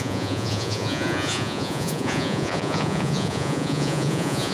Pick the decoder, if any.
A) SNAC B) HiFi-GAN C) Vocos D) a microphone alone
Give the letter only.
C